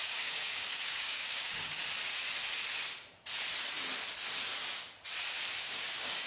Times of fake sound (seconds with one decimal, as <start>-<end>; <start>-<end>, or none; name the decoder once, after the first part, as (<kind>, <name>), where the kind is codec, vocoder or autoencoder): 0.0-1.8 (codec, DAC); 5.6-6.3